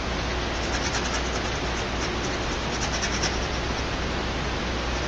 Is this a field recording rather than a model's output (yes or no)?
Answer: yes